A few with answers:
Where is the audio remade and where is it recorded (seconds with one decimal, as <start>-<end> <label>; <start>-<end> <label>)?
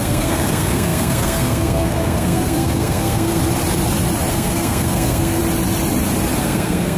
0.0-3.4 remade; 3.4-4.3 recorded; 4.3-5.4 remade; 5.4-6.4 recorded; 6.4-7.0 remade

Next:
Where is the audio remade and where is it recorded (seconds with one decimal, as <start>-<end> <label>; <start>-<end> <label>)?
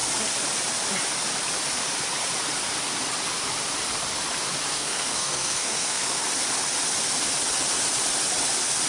0.0-4.7 recorded; 4.7-6.2 remade; 6.2-8.9 recorded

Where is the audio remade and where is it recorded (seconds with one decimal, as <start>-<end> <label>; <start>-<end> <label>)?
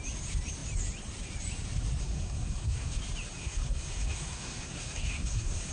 0.0-2.0 recorded; 2.0-3.0 remade; 3.0-3.4 recorded; 3.4-5.7 remade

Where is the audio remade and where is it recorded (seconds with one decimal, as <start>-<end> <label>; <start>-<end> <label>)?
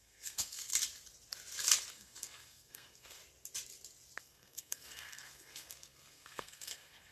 0.0-0.7 remade; 0.7-1.9 recorded; 1.9-3.2 remade; 3.2-4.2 recorded; 4.2-7.1 remade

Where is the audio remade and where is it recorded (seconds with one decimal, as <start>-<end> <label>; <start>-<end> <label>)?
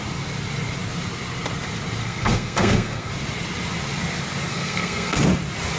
0.0-2.0 recorded; 2.0-3.1 remade; 3.1-4.5 recorded; 4.5-5.2 remade; 5.2-5.8 recorded